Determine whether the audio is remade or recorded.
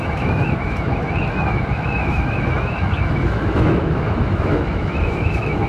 remade